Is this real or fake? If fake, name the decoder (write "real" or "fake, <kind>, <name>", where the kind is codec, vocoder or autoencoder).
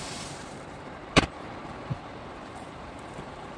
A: fake, vocoder, BigVGAN v2